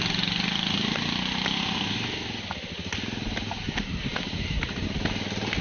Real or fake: real